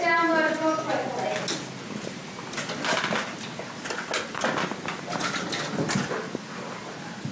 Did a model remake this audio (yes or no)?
no